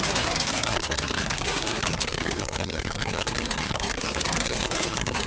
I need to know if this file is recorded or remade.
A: remade